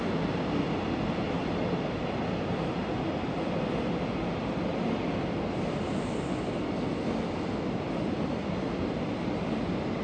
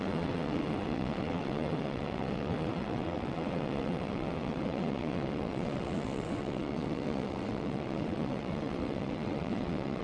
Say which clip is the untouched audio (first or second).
first